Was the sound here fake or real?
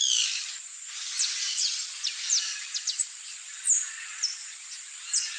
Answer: real